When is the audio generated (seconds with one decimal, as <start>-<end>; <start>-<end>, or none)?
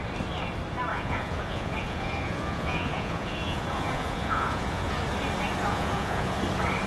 0.9-5.0; 5.7-6.4